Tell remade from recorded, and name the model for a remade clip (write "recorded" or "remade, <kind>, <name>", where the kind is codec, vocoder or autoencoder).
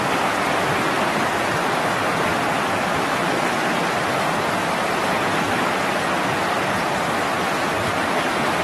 recorded